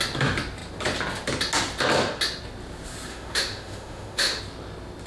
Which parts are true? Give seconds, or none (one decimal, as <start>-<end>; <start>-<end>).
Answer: 0.0-3.1; 4.4-5.1